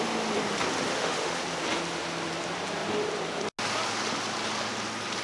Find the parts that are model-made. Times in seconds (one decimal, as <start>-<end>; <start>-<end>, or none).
0.9-1.4